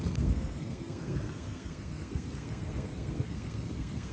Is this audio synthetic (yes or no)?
yes